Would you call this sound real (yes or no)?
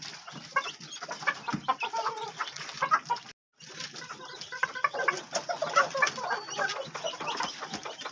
yes